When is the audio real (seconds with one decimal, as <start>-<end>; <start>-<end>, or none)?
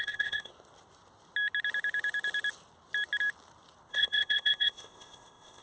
0.5-3.9